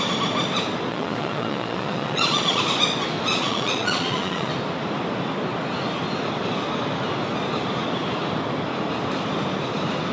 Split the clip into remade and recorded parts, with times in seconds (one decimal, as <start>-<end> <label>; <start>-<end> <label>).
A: 0.0-0.9 recorded; 0.9-2.6 remade; 2.6-3.3 recorded; 3.3-4.5 remade; 4.5-10.1 recorded